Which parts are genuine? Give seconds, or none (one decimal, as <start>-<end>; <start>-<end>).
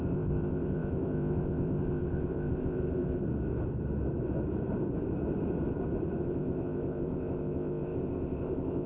3.2-6.2